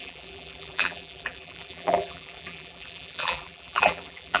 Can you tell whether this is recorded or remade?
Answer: remade